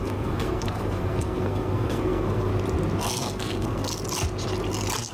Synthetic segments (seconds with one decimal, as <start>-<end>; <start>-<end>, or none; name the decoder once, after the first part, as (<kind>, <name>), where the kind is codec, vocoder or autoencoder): 0.0-2.5 (codec, SNAC); 3.0-3.9